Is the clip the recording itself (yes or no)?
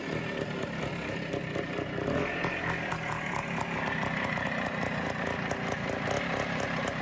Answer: yes